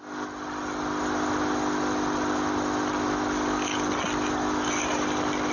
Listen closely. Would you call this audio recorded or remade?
recorded